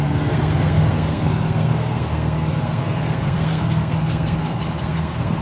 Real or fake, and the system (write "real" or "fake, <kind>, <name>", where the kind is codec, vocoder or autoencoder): fake, codec, SNAC